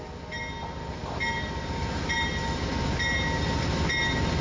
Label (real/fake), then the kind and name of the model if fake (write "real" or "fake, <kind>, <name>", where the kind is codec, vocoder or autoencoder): real